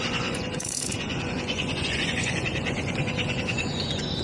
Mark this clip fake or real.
fake